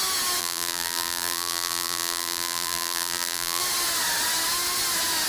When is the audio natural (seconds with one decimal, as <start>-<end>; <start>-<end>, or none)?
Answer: 0.0-0.4; 3.6-5.3